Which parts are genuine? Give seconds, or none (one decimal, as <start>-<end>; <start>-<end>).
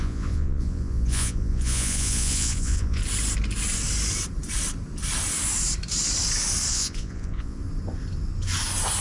3.0-6.7; 7.6-9.0